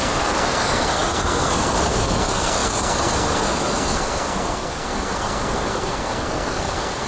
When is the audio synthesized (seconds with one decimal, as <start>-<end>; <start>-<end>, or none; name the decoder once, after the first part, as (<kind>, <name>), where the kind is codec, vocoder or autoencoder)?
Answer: 0.0-7.1 (codec, SNAC)